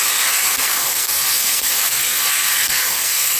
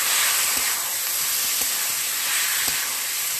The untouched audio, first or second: second